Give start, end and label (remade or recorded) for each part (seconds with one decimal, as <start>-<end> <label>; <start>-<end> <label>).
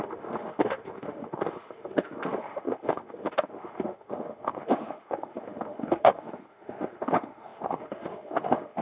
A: 0.0-8.8 remade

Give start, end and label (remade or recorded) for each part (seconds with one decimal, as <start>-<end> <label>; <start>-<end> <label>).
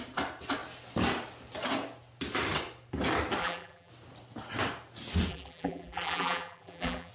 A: 0.0-3.4 recorded; 3.4-3.9 remade; 3.9-5.3 recorded; 5.3-7.1 remade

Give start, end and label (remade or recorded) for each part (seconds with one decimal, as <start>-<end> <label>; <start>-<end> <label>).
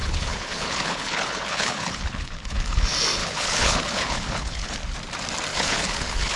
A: 0.0-2.8 remade; 2.8-3.2 recorded; 3.2-4.8 remade; 4.8-5.5 recorded; 5.5-6.4 remade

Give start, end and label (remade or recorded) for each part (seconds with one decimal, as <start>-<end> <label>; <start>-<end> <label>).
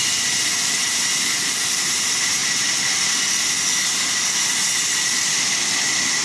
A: 0.0-6.2 recorded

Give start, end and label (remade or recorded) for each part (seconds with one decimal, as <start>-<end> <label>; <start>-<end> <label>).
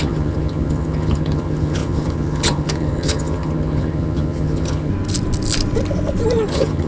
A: 0.0-4.9 remade; 4.9-6.5 recorded; 6.5-6.9 remade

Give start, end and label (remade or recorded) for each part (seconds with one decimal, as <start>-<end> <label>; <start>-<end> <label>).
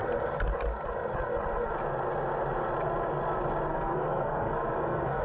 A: 0.0-3.7 recorded; 3.7-5.2 remade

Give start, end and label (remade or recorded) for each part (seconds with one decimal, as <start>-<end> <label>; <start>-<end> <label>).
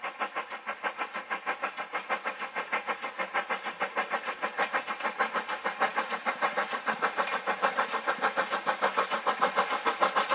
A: 0.0-5.9 recorded; 5.9-8.1 remade; 8.1-10.3 recorded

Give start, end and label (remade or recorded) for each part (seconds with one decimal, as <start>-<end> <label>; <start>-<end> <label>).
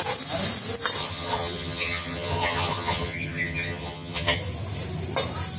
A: 0.0-1.0 recorded; 1.0-4.4 remade; 4.4-5.6 recorded